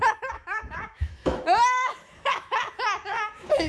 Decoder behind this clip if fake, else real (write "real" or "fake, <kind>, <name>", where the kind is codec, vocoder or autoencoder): fake, autoencoder, DAC-VAE